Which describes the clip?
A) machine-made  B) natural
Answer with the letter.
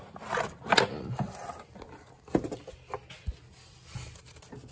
B